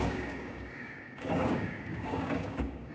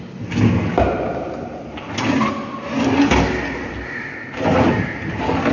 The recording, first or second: second